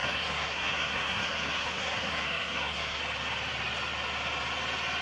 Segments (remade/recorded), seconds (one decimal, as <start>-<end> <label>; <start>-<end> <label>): 0.0-3.0 remade; 3.0-5.0 recorded